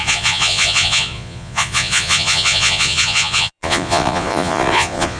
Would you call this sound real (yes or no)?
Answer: no